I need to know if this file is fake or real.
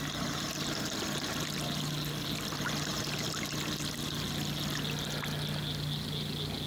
real